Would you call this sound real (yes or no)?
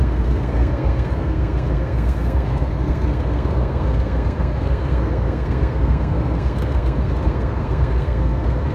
no